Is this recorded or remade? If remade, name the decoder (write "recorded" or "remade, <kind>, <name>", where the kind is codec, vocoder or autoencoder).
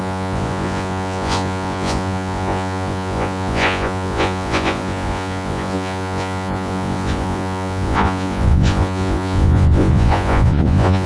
remade, vocoder, Vocos